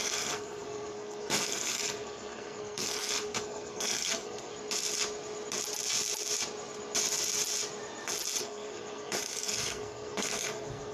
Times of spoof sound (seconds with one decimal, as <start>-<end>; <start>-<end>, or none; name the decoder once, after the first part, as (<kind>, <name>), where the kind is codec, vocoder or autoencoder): 0.0-4.5 (codec, SNAC); 8.4-10.9